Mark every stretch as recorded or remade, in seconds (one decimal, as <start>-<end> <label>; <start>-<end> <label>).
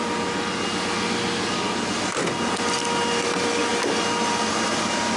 0.0-5.2 recorded